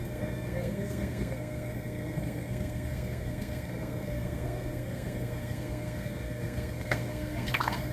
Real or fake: fake